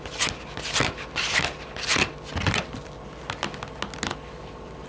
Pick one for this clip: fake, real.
real